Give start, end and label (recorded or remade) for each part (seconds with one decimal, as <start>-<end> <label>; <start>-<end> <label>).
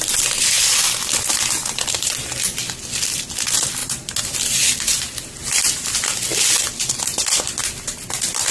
0.0-1.6 recorded; 1.6-2.1 remade; 2.1-8.5 recorded